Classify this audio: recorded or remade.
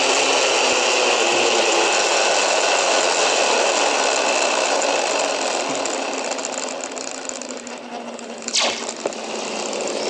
recorded